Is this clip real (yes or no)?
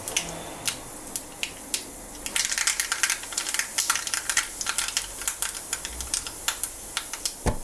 yes